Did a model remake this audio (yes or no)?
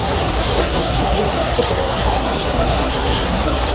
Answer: yes